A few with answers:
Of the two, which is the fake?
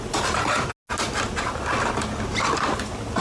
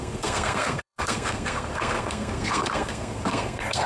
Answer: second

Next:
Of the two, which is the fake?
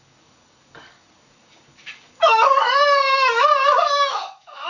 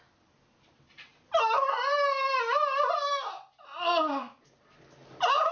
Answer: first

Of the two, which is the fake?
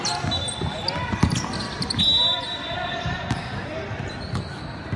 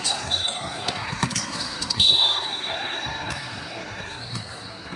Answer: second